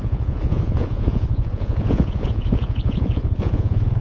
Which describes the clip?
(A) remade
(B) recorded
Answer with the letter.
A